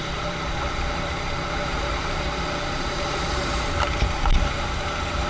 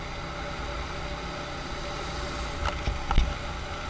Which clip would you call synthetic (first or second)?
first